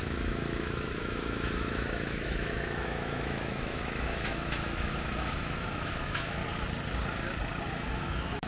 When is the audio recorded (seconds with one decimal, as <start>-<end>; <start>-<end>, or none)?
6.4-7.9

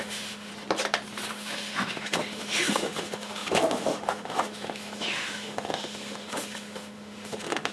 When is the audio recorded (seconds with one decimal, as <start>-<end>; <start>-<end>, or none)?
0.5-1.3

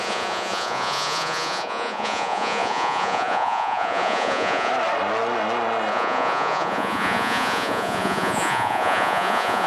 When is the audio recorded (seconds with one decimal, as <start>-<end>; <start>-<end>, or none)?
4.7-5.9

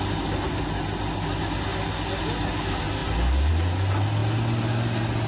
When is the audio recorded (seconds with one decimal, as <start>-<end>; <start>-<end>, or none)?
0.0-5.3

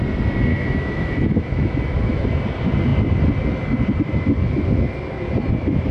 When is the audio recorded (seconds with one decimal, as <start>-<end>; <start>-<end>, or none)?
0.0-0.5; 2.3-5.9

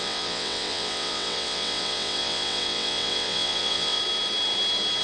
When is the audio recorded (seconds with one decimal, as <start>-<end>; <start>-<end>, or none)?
4.0-5.0

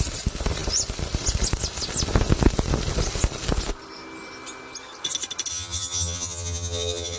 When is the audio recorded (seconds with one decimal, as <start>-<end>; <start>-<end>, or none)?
0.0-5.5

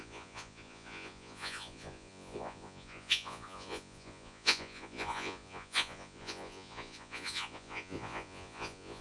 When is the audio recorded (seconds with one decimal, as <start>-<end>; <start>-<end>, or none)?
none